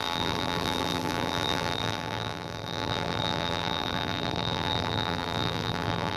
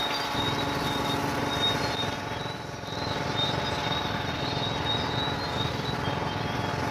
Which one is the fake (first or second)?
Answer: first